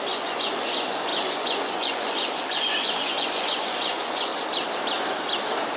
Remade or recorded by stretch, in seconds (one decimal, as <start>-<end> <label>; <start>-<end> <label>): 0.0-4.3 remade; 4.3-5.8 recorded

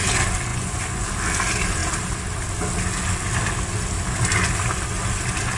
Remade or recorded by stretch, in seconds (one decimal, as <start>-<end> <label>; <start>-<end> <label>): 0.0-0.5 recorded; 0.5-1.1 remade; 1.1-5.6 recorded

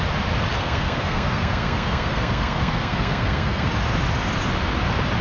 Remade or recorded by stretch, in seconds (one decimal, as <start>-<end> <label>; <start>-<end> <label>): 0.0-0.6 recorded; 0.6-3.7 remade; 3.7-5.2 recorded

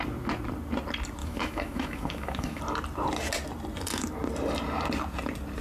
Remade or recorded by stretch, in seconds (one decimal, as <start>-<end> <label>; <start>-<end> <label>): 0.0-1.2 recorded; 1.2-2.6 remade; 2.6-5.6 recorded

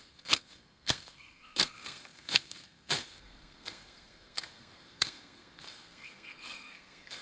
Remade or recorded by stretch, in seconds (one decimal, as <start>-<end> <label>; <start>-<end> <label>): 0.0-7.2 remade

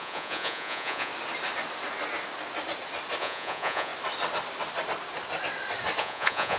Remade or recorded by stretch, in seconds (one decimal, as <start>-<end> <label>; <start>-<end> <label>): 0.0-1.1 remade; 1.1-3.2 recorded; 3.2-3.9 remade; 3.9-6.0 recorded; 6.0-6.6 remade